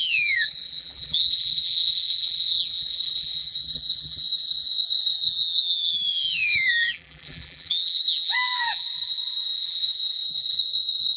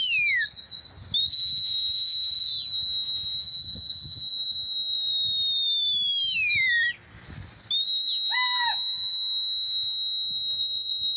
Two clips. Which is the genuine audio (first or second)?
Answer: second